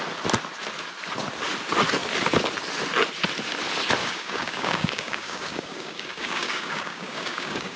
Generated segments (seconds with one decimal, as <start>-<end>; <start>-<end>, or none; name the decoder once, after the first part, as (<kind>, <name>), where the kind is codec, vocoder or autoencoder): 4.0-7.8 (codec, DAC)